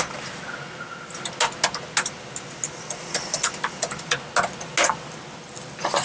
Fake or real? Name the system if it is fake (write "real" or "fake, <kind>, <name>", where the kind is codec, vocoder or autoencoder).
real